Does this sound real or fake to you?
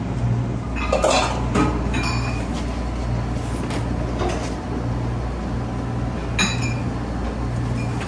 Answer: real